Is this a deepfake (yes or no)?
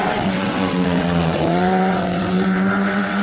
yes